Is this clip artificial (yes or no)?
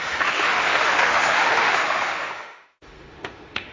yes